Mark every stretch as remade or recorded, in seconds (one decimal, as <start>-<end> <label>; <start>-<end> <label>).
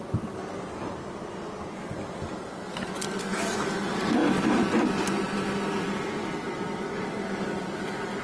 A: 0.0-8.2 recorded